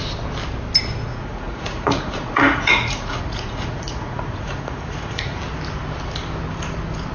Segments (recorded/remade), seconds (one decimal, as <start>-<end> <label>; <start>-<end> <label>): 0.0-1.1 recorded; 1.1-5.4 remade; 5.4-7.1 recorded